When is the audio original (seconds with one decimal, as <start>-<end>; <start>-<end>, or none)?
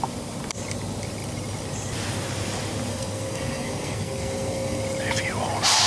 0.0-2.9; 4.8-5.9